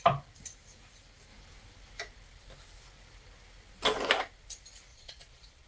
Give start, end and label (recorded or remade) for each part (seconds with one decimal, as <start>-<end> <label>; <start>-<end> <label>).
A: 0.0-4.9 recorded; 4.9-5.7 remade